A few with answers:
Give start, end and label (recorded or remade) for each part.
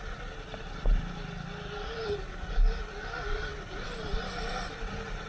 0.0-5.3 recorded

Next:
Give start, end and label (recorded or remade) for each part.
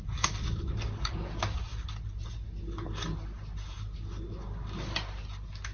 0.0-5.7 recorded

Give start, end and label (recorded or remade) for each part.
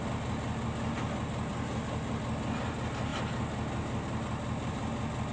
0.0-5.3 recorded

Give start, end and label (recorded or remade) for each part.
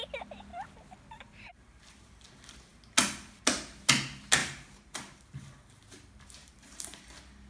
0.0-4.4 recorded; 4.4-5.7 remade; 5.7-6.4 recorded; 6.4-7.0 remade; 7.0-7.5 recorded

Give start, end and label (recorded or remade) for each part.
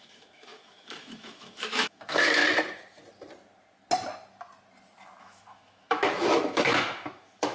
0.0-2.4 remade; 2.4-5.2 recorded; 5.2-7.5 remade